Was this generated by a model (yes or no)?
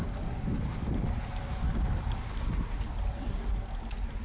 no